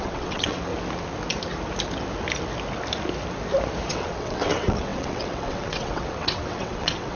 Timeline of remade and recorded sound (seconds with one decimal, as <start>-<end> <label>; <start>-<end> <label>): 0.0-0.7 remade; 0.7-3.9 recorded; 3.9-7.2 remade